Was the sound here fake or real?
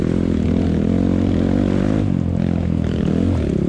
real